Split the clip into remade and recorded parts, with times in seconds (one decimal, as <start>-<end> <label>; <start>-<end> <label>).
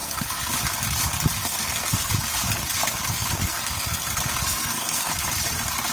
0.0-0.5 remade; 0.5-1.4 recorded; 1.4-2.1 remade; 2.1-2.8 recorded; 2.8-5.1 remade; 5.1-5.9 recorded